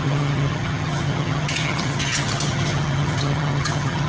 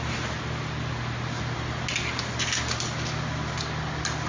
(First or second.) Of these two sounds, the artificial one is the first